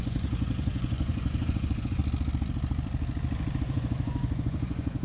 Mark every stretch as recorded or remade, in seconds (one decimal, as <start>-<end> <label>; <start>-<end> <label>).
0.0-2.0 remade; 2.0-3.6 recorded; 3.6-5.0 remade

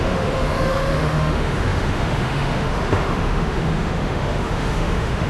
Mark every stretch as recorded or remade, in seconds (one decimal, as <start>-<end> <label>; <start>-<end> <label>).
0.0-5.3 remade

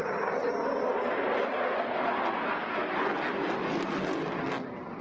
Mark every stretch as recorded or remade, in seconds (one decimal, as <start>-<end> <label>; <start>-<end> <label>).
0.0-5.0 recorded

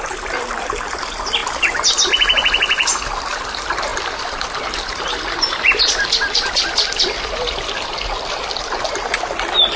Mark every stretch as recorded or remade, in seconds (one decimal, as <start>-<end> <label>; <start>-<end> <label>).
0.0-3.9 recorded; 3.9-8.9 remade; 8.9-9.8 recorded

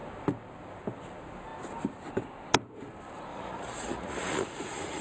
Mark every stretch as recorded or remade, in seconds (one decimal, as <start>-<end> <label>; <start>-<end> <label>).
0.0-3.3 recorded; 3.3-5.0 remade

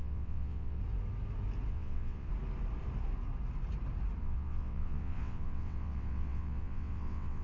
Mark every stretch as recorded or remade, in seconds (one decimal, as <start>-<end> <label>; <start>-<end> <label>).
0.0-0.8 remade; 0.8-1.7 recorded; 1.7-2.3 remade; 2.3-4.2 recorded; 4.2-7.4 remade

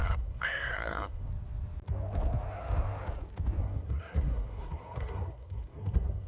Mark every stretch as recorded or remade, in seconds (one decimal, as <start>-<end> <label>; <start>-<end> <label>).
0.0-1.3 remade; 1.3-3.6 recorded; 3.6-6.3 remade

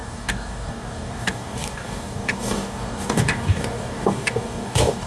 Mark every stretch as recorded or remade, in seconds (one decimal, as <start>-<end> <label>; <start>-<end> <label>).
0.0-5.1 remade